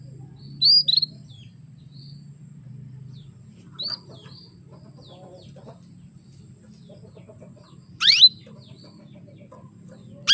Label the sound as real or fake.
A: real